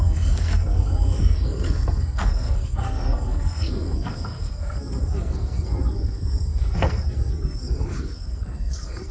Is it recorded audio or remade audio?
remade